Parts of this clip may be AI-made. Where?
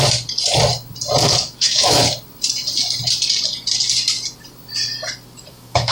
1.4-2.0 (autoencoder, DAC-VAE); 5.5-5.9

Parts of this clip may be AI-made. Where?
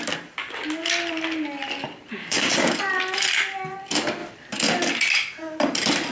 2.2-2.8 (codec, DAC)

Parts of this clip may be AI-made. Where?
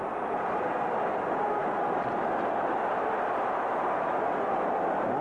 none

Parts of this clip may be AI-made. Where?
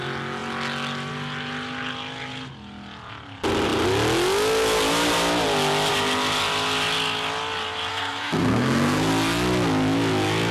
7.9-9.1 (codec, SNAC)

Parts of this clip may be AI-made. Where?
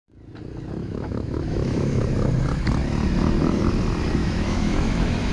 0.8-2.0 (autoencoder, DAC-VAE); 4.2-5.3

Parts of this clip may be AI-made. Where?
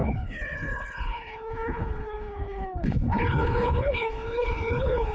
0.0-5.1 (codec, HILCodec)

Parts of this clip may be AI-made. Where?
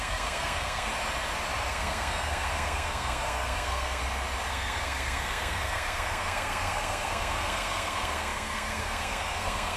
0.0-0.9 (codec, SNAC); 1.7-4.0; 4.5-9.8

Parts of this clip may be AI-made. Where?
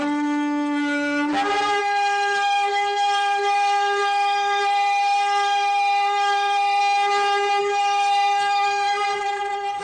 0.0-1.3 (codec, SNAC); 1.8-6.8; 7.6-9.8